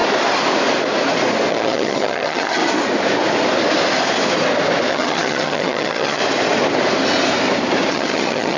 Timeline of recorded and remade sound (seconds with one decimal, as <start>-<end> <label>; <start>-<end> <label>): 0.0-1.5 recorded; 1.5-2.6 remade; 2.6-4.9 recorded; 4.9-6.2 remade; 6.2-7.9 recorded; 7.9-8.6 remade